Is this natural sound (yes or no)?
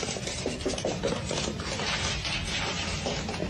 yes